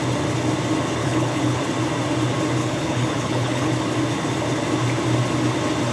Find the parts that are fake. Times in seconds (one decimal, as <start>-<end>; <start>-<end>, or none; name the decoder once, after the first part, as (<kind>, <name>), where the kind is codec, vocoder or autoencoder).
1.0-1.6 (codec, HILCodec); 2.6-3.7

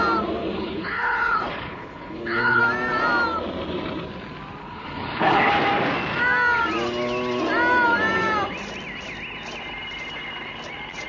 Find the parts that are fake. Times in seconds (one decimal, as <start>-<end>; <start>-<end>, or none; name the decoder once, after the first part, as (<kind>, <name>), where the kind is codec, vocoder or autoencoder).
0.4-2.6 (codec, HILCodec); 4.6-5.5